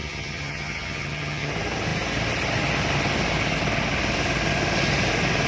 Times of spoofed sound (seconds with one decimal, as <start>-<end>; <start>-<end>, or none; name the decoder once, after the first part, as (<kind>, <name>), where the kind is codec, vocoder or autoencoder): 0.0-1.5 (vocoder, HiFi-GAN)